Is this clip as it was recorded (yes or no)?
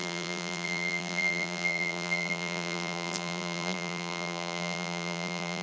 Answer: no